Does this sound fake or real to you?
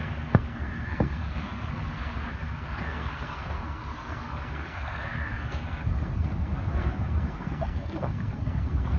fake